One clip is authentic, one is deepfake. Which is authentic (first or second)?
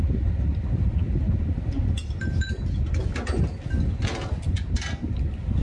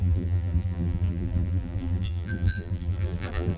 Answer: first